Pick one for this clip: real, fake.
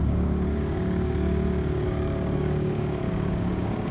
fake